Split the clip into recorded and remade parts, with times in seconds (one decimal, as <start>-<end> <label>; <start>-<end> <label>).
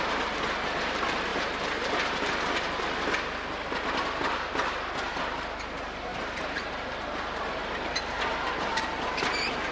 0.0-6.1 recorded; 6.1-6.7 remade; 6.7-7.6 recorded; 7.6-8.2 remade; 8.2-9.7 recorded